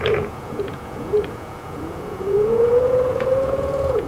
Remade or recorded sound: remade